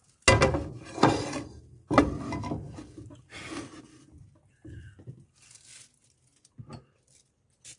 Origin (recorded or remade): recorded